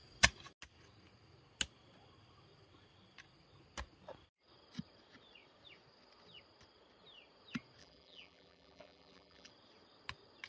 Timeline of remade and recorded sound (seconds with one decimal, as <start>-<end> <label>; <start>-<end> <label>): 0.0-7.8 recorded; 7.8-9.5 remade; 9.5-10.5 recorded